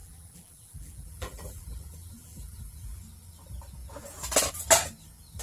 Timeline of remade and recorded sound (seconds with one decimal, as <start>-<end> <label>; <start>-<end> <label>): 0.0-3.0 remade; 3.0-5.4 recorded